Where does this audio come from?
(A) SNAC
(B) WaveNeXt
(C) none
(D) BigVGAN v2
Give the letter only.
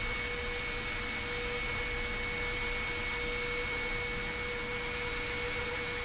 C